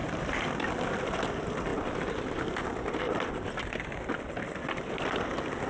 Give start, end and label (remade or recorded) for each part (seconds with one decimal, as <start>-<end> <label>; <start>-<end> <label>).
0.0-5.7 recorded